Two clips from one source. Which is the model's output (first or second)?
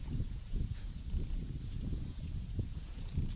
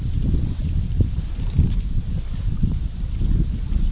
first